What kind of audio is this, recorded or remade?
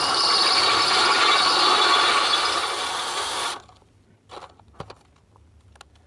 recorded